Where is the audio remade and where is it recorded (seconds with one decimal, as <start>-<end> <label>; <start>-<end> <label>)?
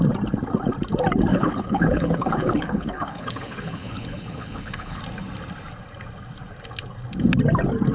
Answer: 0.0-1.3 recorded; 1.3-5.0 remade; 5.0-7.9 recorded